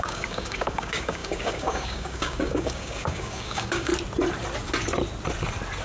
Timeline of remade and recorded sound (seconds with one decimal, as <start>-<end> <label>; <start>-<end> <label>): 0.0-3.9 remade; 3.9-5.8 recorded